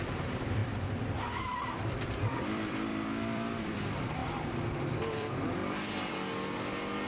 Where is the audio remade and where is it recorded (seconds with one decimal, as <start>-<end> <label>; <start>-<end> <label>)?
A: 0.0-5.6 remade; 5.6-7.1 recorded